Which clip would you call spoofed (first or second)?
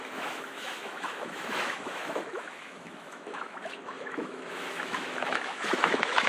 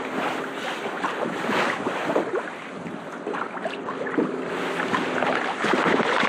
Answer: first